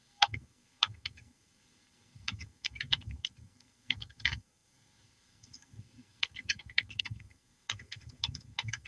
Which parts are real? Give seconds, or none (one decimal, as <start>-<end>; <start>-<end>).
none